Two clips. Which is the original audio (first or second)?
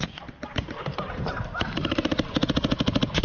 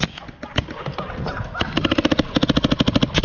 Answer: second